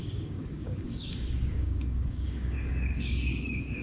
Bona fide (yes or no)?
no